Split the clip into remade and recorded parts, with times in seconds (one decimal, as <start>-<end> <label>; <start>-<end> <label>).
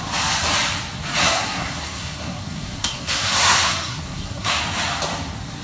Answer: 0.0-1.2 recorded; 1.2-4.6 remade; 4.6-5.6 recorded